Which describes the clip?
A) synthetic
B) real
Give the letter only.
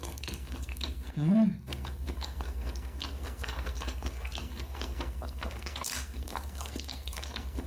A